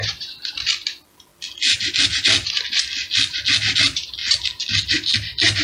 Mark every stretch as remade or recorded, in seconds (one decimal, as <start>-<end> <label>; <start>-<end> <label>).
0.0-5.6 recorded